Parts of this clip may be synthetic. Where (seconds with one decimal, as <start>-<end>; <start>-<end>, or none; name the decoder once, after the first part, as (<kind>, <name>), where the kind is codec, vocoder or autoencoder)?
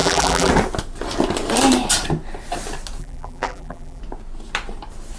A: 0.0-0.5 (vocoder, BigVGAN v2); 3.0-4.0